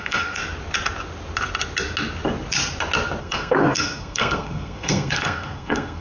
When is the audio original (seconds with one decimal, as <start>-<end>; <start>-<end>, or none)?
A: 0.4-3.2